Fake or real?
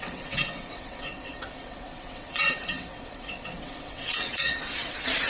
fake